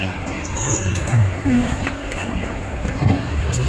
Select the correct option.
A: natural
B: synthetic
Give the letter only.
B